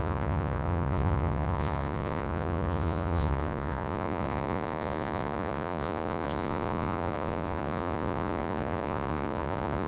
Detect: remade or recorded remade